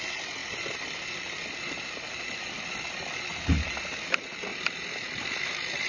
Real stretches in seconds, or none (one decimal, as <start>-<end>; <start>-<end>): 0.0-0.4; 3.7-4.5